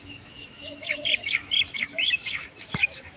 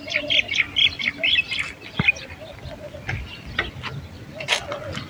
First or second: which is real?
second